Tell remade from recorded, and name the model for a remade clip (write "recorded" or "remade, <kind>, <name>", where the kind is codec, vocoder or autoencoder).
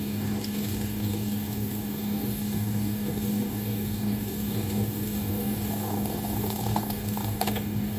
remade, codec, DAC